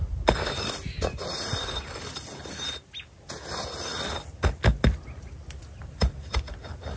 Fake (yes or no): no